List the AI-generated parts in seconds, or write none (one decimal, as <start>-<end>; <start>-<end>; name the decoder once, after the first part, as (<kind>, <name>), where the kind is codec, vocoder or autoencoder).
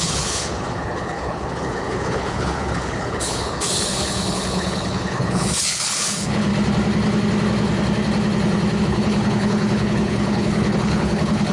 0.0-6.5 (codec, HILCodec); 8.8-11.5